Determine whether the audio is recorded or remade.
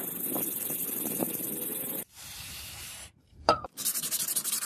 remade